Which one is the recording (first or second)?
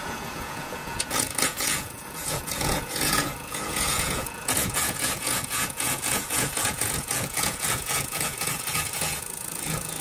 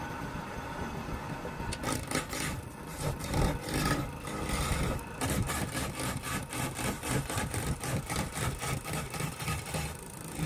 second